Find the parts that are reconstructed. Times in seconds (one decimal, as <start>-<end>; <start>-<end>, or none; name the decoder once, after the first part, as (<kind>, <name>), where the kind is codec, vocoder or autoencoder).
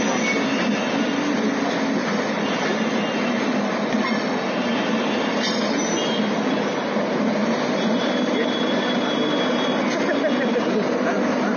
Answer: none